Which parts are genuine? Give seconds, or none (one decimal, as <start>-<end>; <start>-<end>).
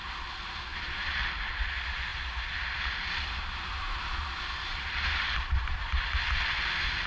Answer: 0.0-0.7; 1.2-2.1; 6.1-7.1